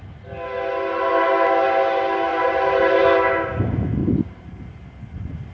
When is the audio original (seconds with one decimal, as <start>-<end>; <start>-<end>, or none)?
0.0-2.3; 3.0-4.0; 4.6-5.5